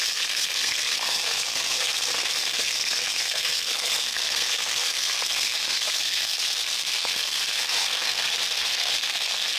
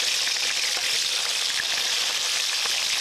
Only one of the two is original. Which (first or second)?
second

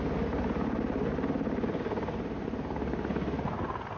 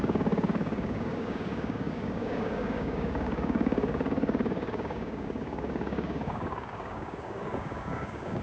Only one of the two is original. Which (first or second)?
first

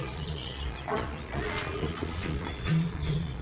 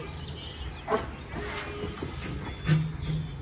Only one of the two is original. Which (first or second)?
second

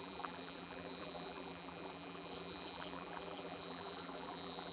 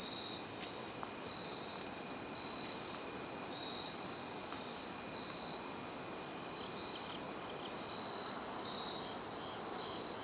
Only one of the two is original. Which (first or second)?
second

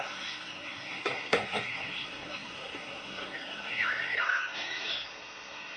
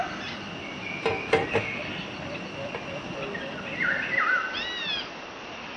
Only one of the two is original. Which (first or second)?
second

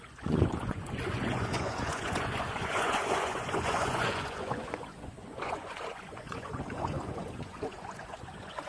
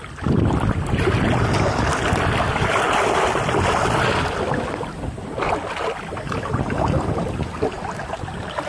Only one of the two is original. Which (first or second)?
second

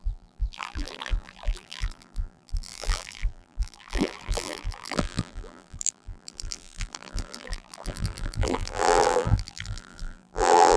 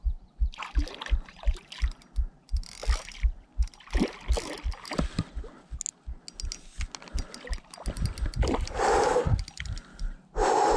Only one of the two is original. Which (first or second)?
second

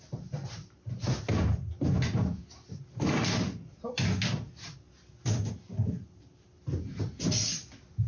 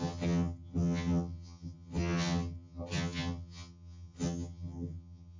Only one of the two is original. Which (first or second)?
first